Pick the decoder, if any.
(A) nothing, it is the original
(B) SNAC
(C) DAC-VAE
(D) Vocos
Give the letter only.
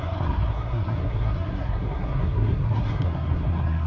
B